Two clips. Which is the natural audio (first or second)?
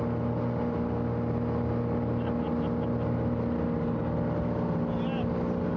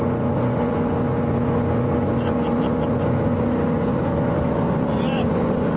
first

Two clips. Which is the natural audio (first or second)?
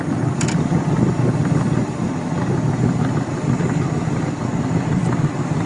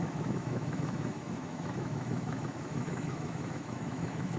first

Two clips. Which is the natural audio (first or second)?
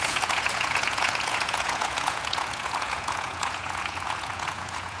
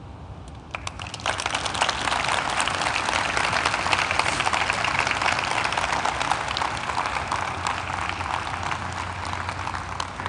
second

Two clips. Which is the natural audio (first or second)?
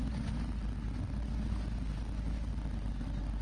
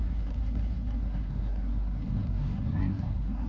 first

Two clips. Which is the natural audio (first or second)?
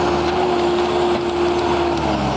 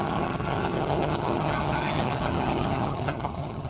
first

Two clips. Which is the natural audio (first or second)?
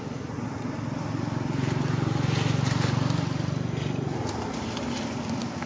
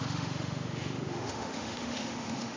first